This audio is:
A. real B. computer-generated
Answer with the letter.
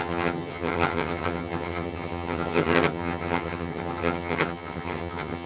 B